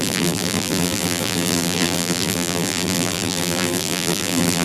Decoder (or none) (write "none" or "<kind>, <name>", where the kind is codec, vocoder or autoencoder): vocoder, BigVGAN v2